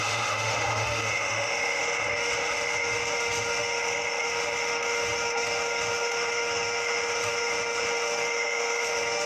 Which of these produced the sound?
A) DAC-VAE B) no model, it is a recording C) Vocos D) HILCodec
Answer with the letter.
A